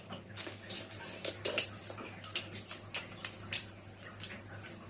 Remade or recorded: recorded